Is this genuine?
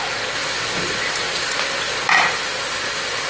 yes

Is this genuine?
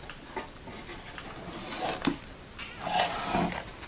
yes